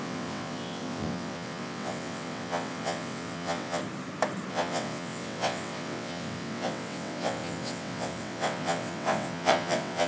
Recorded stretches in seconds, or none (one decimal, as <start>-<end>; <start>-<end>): 3.8-4.5